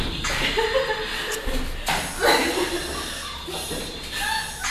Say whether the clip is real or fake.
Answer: real